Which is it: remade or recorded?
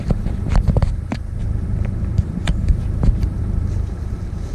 remade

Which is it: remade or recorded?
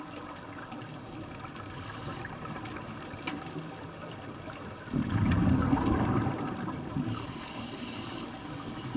recorded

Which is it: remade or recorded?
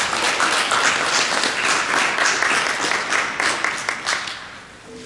recorded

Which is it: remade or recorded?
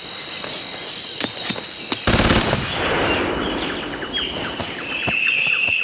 recorded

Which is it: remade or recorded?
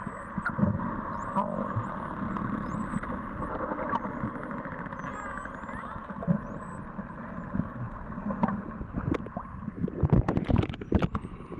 recorded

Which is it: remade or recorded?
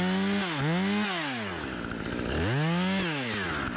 recorded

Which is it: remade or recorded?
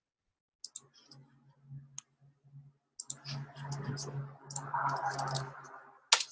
recorded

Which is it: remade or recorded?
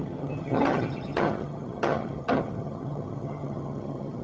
remade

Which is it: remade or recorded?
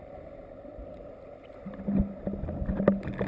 recorded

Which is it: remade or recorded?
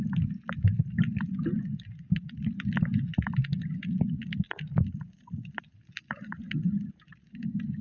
recorded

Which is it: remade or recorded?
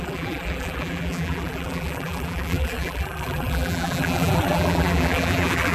remade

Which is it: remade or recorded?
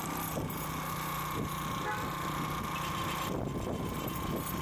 recorded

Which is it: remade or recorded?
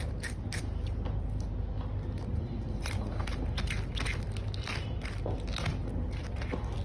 recorded